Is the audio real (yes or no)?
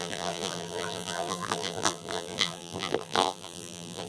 no